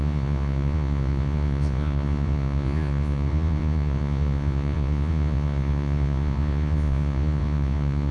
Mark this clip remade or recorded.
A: remade